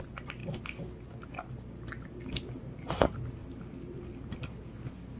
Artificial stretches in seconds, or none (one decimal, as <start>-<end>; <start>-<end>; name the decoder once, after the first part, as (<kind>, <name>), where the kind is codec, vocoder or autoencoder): none